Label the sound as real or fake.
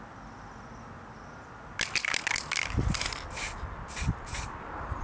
real